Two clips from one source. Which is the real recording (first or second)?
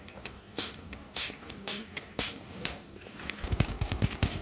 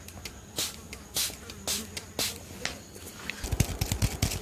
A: second